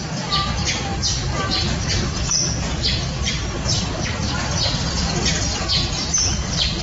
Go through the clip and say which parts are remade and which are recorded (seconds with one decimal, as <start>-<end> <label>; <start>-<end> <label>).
0.0-6.8 recorded